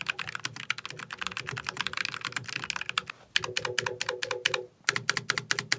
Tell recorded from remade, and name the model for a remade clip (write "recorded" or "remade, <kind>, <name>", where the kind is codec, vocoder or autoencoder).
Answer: recorded